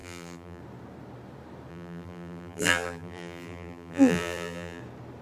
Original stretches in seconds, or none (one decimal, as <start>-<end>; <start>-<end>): 0.6-1.7; 4.8-5.2